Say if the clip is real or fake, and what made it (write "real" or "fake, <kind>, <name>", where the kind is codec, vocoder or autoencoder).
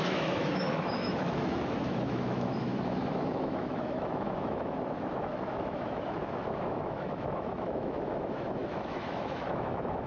fake, autoencoder, DAC-VAE